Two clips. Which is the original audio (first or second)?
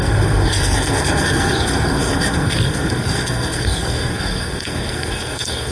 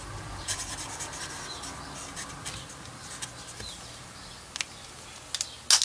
second